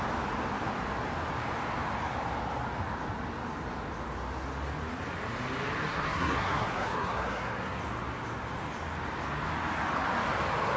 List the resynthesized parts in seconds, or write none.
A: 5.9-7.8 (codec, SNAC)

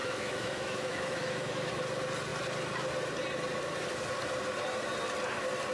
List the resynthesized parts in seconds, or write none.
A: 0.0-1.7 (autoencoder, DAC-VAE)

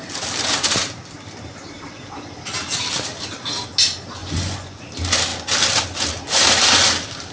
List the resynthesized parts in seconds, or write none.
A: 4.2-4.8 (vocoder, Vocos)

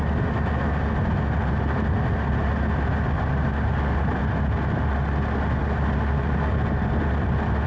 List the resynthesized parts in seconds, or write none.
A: none

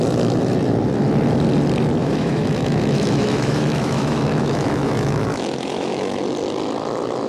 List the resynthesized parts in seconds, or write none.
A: 2.0-6.2 (autoencoder, DAC-VAE)

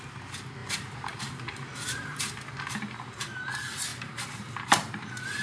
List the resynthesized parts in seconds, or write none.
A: 0.6-2.2 (vocoder, BigVGAN v2); 3.9-5.4